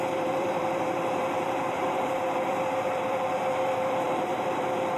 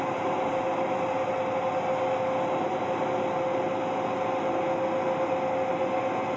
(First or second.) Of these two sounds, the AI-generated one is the first